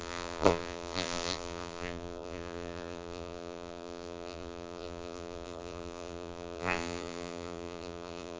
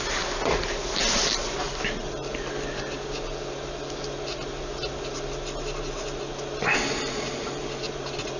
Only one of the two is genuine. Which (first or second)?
second